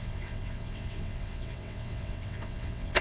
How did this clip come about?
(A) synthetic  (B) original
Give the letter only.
A